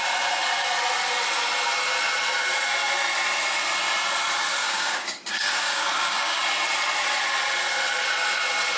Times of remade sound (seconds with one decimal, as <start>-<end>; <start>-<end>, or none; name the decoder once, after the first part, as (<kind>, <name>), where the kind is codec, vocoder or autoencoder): 4.6-6.4 (codec, DAC)